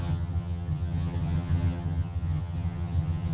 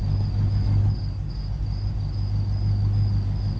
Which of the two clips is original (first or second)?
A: second